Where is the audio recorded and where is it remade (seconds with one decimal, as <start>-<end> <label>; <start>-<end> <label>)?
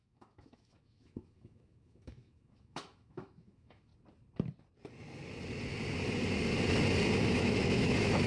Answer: 0.0-3.9 remade; 3.9-7.3 recorded; 7.3-8.3 remade